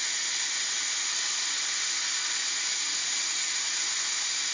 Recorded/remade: recorded